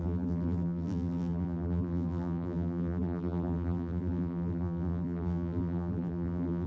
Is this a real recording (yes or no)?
no